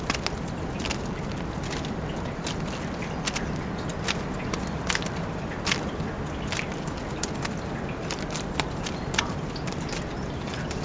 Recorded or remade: recorded